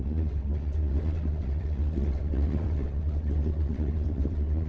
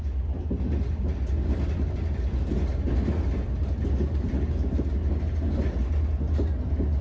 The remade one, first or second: first